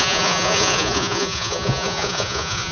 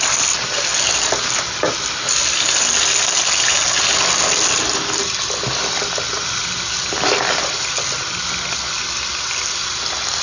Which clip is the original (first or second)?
second